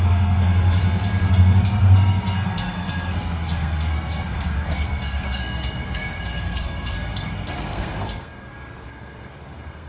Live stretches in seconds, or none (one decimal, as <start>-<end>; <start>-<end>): 0.8-1.3